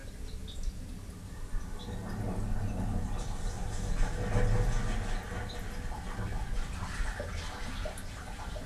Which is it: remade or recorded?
recorded